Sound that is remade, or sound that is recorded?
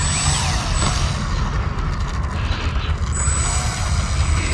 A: recorded